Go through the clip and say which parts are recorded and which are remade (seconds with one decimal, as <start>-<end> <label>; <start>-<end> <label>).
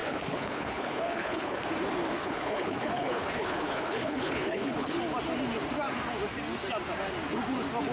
0.0-1.6 remade; 1.6-2.2 recorded; 2.2-5.0 remade; 5.0-7.9 recorded